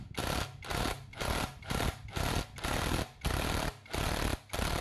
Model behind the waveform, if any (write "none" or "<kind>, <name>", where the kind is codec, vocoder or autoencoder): none